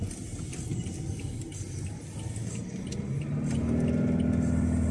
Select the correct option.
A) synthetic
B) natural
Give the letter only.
B